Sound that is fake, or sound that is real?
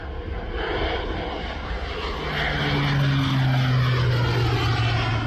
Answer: real